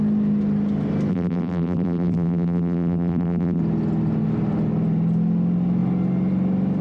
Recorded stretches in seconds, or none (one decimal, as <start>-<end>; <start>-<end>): 0.0-1.1; 3.6-6.8